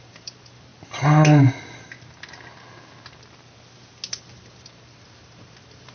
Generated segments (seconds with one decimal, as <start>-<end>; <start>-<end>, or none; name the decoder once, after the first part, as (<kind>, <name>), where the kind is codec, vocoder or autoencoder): 0.0-0.7 (vocoder, BigVGAN v2); 4.2-5.9